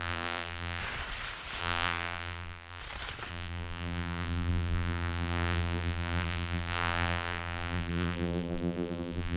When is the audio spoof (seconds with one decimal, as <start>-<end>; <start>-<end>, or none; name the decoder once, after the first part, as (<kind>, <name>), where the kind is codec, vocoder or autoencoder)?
0.0-0.8 (vocoder, BigVGAN v2); 1.6-2.8; 3.3-9.4